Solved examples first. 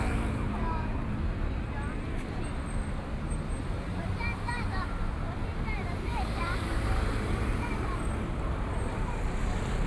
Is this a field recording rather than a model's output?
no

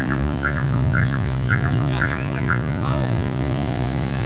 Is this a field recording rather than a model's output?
no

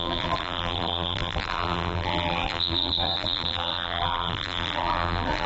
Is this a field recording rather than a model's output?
no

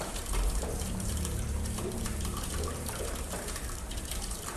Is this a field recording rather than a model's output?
no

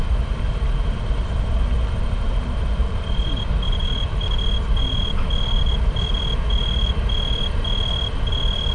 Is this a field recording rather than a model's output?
yes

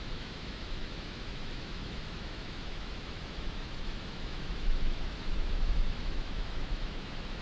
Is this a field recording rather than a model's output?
no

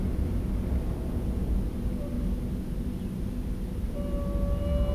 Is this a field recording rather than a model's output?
yes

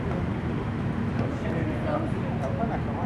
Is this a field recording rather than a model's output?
yes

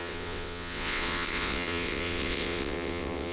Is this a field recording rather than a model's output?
no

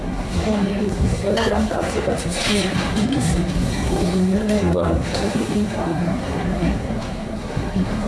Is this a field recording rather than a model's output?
no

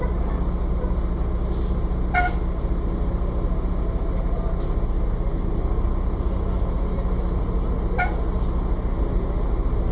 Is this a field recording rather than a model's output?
yes